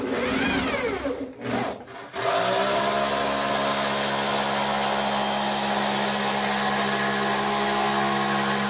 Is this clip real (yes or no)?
yes